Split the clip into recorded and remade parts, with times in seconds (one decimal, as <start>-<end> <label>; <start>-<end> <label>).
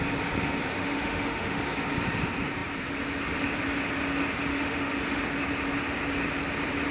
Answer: 0.0-0.7 recorded; 0.7-1.6 remade; 1.6-4.5 recorded; 4.5-5.2 remade; 5.2-6.9 recorded